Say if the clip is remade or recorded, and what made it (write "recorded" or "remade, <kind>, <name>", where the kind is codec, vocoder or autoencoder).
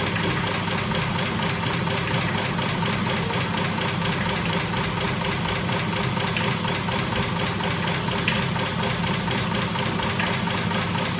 recorded